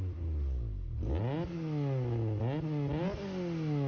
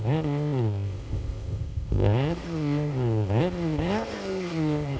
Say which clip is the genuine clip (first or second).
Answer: first